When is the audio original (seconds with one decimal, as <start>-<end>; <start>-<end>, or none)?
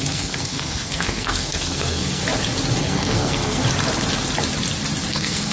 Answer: 2.2-2.8; 3.6-5.1